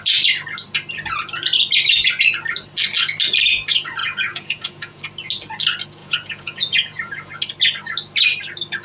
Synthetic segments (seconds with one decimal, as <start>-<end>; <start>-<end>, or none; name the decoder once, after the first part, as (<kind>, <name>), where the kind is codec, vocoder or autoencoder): 4.0-5.0 (vocoder, Vocos); 6.0-7.3